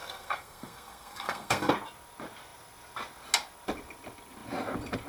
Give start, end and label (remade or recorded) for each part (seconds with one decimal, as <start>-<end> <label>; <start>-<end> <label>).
0.0-1.7 remade; 1.7-5.1 recorded